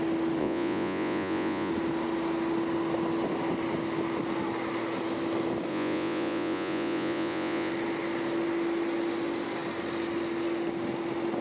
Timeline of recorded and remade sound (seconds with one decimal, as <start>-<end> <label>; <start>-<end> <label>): 0.0-0.4 recorded; 0.4-1.7 remade; 1.7-5.7 recorded; 5.7-7.7 remade; 7.7-11.4 recorded